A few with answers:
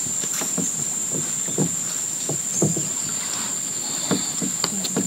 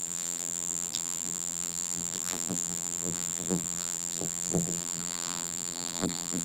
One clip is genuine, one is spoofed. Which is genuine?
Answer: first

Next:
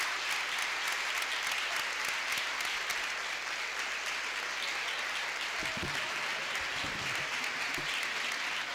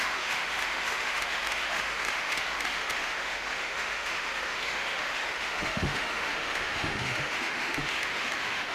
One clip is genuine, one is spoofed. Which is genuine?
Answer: first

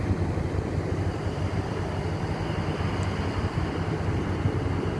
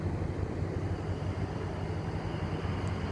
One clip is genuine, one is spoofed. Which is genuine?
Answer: second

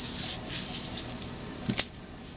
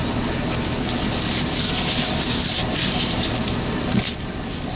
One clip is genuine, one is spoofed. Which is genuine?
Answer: first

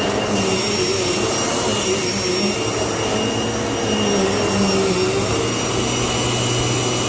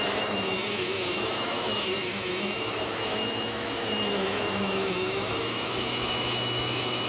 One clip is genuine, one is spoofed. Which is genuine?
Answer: first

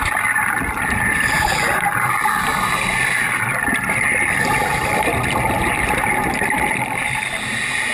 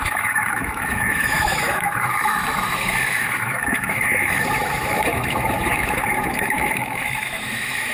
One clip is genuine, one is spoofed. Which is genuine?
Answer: first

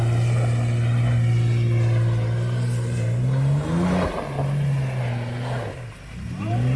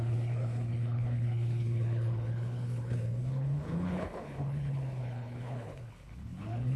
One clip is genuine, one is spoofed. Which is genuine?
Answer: first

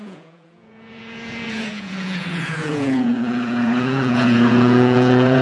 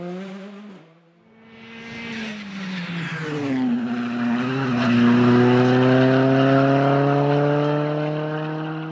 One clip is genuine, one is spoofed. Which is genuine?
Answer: second